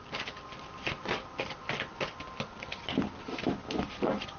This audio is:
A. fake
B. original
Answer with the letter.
B